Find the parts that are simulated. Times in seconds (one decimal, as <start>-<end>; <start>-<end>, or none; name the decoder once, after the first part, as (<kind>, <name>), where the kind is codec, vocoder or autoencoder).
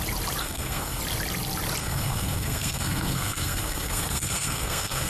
0.4-1.0 (codec, SNAC); 1.8-5.1